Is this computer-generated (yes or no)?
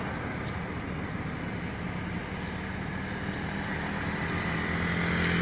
no